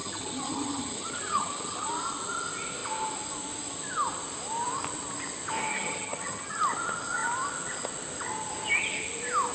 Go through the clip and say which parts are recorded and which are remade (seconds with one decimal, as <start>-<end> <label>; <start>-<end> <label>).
0.0-1.9 remade; 1.9-5.7 recorded; 5.7-6.6 remade; 6.6-9.5 recorded